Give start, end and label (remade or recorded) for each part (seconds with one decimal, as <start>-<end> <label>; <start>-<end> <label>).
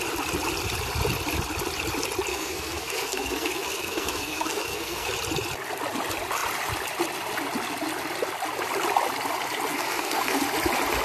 0.0-2.3 recorded; 2.3-5.1 remade; 5.1-9.7 recorded; 9.7-10.4 remade; 10.4-11.0 recorded